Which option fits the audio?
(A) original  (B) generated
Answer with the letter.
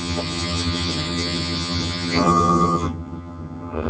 B